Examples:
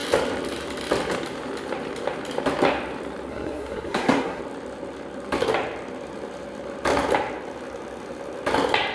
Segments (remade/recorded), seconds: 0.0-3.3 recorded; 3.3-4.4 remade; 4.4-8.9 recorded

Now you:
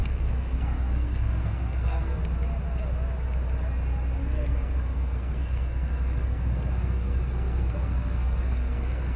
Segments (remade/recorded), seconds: 0.0-2.2 remade; 2.2-4.2 recorded; 4.2-9.2 remade

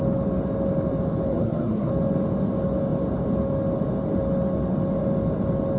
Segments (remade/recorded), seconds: 0.0-1.3 recorded; 1.3-1.9 remade; 1.9-5.8 recorded

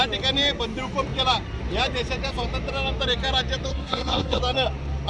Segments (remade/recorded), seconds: 0.0-3.7 recorded; 3.7-4.4 remade; 4.4-5.1 recorded

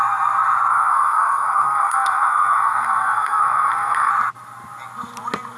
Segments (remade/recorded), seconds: 0.0-0.7 recorded; 0.7-4.1 remade; 4.1-5.6 recorded

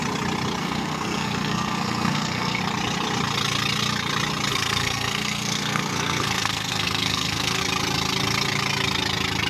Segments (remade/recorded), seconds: 0.0-0.6 recorded; 0.6-2.6 remade; 2.6-4.5 recorded; 4.5-7.6 remade; 7.6-9.5 recorded